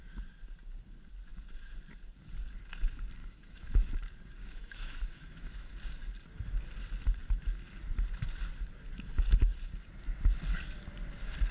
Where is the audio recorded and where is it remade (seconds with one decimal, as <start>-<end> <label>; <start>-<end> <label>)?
0.0-3.2 recorded; 3.2-3.9 remade; 3.9-4.4 recorded; 4.4-5.7 remade; 5.7-11.5 recorded